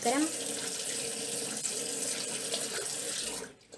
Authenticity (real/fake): real